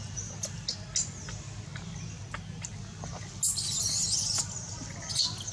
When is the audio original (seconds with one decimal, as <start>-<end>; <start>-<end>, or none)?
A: 0.0-5.5